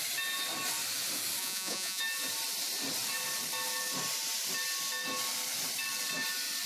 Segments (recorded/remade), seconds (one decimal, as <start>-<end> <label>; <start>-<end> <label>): 0.0-1.4 recorded; 1.4-2.0 remade; 2.0-6.7 recorded